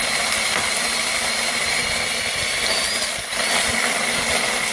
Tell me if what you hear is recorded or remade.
recorded